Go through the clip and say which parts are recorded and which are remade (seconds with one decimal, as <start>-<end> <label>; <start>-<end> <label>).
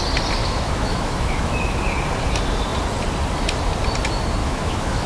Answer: 0.0-0.4 recorded; 0.4-1.8 remade; 1.8-4.4 recorded; 4.4-5.1 remade